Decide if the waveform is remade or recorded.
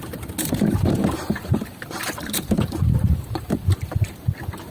remade